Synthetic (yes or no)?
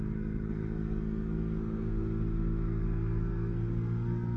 yes